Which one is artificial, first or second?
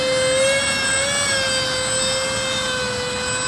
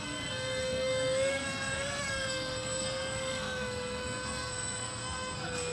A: second